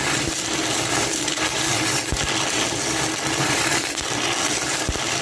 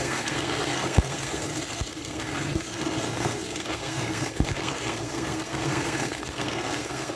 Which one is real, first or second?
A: first